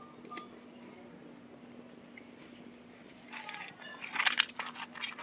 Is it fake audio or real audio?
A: real